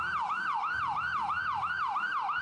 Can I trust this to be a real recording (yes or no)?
yes